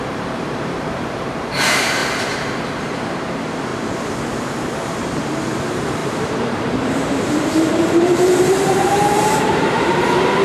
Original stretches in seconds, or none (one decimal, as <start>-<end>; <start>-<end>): 2.0-2.8